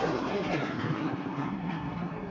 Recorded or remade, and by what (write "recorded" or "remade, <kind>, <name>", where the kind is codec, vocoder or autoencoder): remade, codec, SNAC